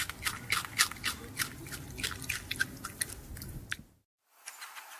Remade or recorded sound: recorded